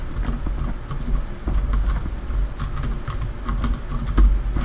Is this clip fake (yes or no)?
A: no